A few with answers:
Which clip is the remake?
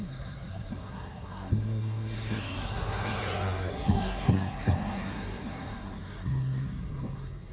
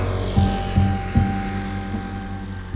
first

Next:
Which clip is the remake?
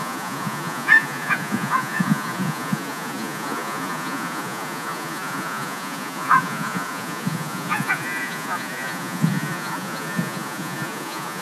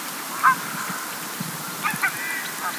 first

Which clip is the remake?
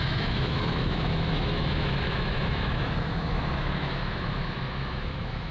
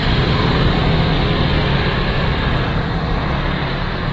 first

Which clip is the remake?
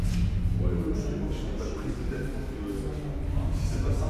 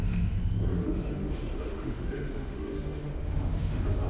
second